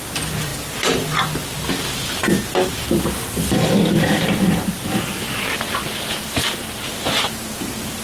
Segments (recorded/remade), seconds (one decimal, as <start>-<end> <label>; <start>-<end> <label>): 0.0-8.0 recorded